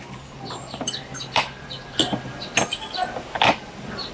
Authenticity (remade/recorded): remade